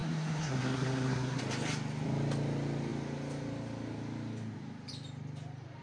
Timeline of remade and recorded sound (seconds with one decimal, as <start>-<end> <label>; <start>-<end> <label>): 0.0-1.4 remade; 1.4-5.8 recorded